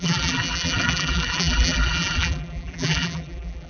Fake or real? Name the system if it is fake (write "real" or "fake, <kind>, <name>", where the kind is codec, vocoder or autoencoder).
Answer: fake, vocoder, BigVGAN v2